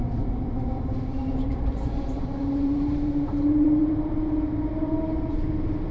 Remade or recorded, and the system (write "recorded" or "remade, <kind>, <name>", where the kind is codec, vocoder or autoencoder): remade, vocoder, BigVGAN v2